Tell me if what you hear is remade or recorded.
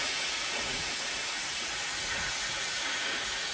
remade